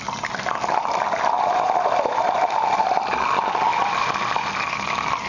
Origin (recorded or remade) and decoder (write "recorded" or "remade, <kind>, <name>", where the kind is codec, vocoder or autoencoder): remade, vocoder, BigVGAN v2